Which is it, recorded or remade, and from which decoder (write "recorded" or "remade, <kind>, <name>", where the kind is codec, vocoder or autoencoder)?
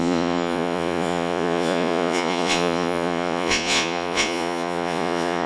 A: remade, vocoder, Vocos